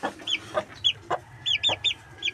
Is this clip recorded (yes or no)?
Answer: yes